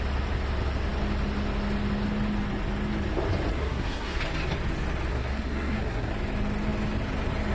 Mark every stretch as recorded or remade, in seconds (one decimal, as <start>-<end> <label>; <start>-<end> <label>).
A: 0.0-3.5 recorded; 3.5-4.2 remade; 4.2-5.1 recorded; 5.1-6.1 remade; 6.1-7.5 recorded

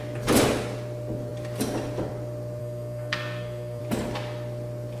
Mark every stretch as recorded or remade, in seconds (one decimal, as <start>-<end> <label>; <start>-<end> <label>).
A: 0.0-2.6 recorded; 2.6-3.8 remade; 3.8-5.0 recorded

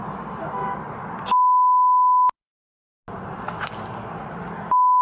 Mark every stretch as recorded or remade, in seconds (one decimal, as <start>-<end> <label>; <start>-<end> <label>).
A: 0.0-5.0 recorded

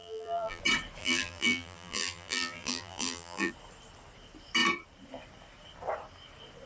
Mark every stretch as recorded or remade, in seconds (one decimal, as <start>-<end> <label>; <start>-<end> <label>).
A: 0.0-0.6 remade; 0.6-1.0 recorded; 1.0-3.5 remade; 3.5-6.7 recorded

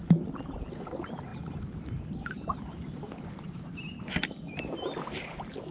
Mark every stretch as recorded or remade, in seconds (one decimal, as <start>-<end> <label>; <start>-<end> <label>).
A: 0.0-1.3 recorded; 1.3-4.7 remade; 4.7-5.7 recorded

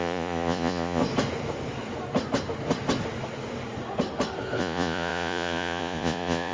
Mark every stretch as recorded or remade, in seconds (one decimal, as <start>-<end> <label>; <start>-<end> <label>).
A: 0.0-1.0 remade; 1.0-4.6 recorded; 4.6-6.5 remade